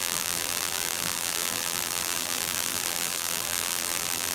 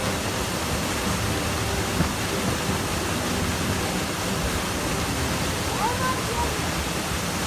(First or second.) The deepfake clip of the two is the first